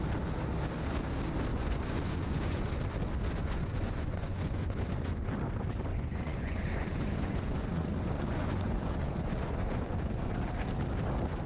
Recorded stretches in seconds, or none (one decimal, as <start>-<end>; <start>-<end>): 0.0-1.5; 2.7-3.4; 5.3-5.9; 10.3-11.5